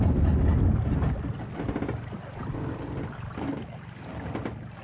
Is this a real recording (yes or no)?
yes